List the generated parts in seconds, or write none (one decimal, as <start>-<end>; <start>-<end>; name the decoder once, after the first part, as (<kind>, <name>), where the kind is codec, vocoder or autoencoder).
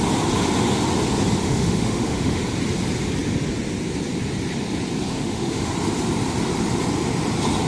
1.4-2.4 (autoencoder, DAC-VAE); 5.1-5.7